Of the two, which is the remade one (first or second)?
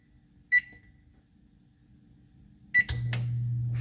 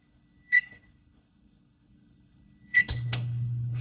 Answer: second